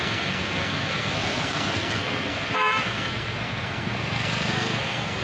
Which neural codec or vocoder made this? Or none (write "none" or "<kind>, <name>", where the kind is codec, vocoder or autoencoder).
codec, SNAC